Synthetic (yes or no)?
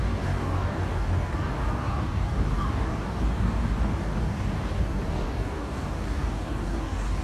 yes